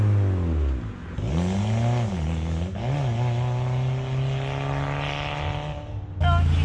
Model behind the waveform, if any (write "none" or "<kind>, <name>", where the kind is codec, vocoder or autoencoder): none